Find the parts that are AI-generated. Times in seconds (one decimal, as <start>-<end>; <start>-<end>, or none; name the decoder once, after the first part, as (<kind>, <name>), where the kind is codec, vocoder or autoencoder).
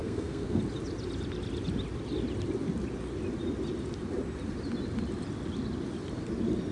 0.0-0.6 (codec, SNAC)